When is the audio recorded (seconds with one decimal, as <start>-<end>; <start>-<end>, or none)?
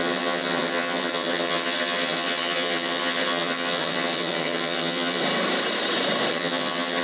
5.2-6.3